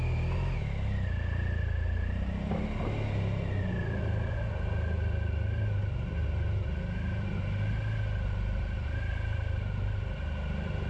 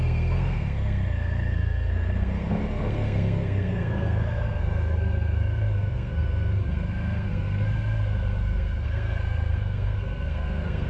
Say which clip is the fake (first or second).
second